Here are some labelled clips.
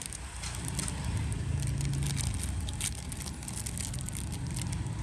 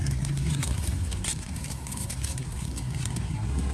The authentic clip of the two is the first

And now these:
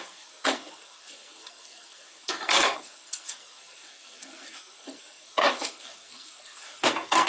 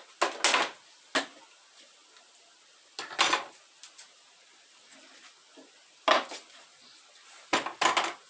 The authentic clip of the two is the second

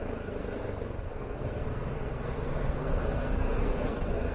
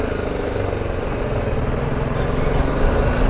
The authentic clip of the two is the second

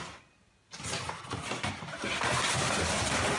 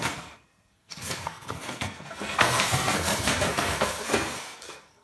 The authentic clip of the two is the first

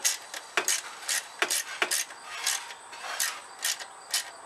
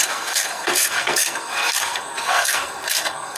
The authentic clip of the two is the first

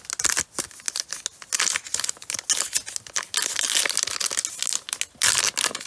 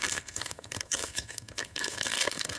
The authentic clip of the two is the first